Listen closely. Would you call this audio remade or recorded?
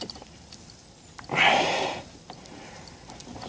recorded